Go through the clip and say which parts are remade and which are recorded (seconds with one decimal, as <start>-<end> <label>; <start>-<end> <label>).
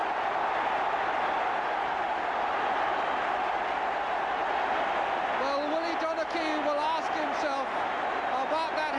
0.0-9.0 recorded